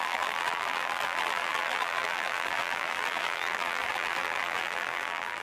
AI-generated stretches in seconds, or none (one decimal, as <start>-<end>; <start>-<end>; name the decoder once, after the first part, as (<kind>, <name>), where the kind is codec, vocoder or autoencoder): 0.0-5.4 (vocoder, BigVGAN v2)

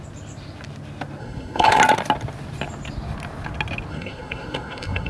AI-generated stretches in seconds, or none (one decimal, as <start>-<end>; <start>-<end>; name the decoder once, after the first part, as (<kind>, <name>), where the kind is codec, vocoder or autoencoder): 1.2-1.8 (codec, SNAC); 3.9-5.1

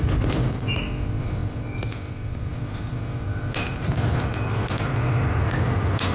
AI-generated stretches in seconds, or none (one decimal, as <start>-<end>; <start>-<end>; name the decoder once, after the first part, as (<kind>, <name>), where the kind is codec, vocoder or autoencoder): none

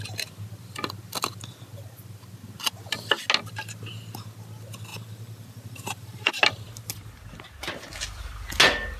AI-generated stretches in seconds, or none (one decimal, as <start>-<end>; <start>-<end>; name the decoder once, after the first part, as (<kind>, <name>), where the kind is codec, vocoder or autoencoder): 4.9-6.3 (vocoder, BigVGAN v2)

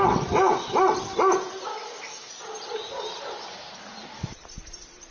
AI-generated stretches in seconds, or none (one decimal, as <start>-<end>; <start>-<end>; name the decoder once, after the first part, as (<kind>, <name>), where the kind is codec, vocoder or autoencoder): 1.7-2.3 (autoencoder, DAC-VAE)

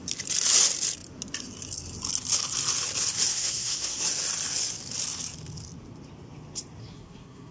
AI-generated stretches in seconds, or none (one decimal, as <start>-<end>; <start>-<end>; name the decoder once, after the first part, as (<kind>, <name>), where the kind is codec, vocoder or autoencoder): 3.3-4.0 (codec, SNAC); 6.8-7.5

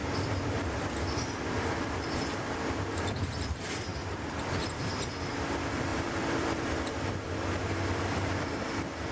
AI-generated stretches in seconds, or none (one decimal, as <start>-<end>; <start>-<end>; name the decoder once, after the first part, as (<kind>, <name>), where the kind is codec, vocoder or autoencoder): 0.0-9.1 (vocoder, BigVGAN v2)

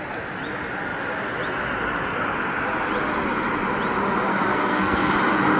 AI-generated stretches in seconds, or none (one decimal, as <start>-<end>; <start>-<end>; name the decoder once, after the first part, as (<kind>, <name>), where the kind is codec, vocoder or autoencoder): 4.3-5.1 (codec, SNAC)